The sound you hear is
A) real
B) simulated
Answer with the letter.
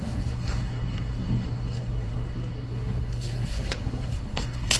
B